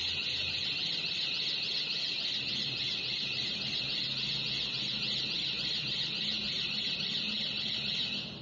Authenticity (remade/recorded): recorded